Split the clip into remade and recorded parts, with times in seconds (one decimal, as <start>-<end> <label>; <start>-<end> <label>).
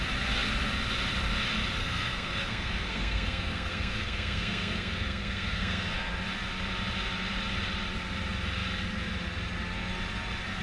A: 0.0-1.8 recorded; 1.8-6.1 remade; 6.1-10.6 recorded